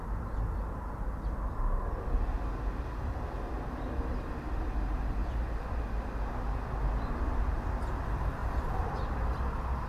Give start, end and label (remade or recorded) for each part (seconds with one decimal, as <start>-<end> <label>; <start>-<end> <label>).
0.0-5.2 recorded; 5.2-5.8 remade; 5.8-8.4 recorded; 8.4-9.4 remade; 9.4-9.9 recorded